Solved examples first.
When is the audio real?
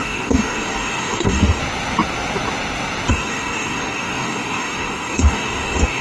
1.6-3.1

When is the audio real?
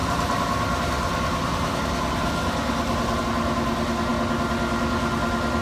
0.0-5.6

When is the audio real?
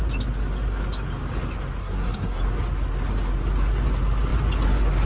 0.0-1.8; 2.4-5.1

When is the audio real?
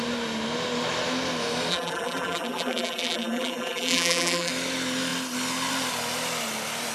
0.0-1.7; 4.5-6.9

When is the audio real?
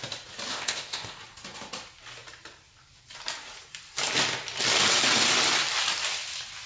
0.0-0.5; 1.2-6.7